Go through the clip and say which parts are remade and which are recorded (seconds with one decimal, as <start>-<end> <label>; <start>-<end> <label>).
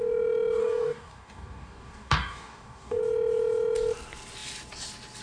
0.0-0.6 recorded; 0.6-3.0 remade; 3.0-5.2 recorded